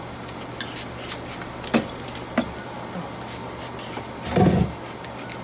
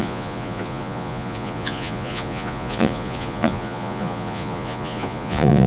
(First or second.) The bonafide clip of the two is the first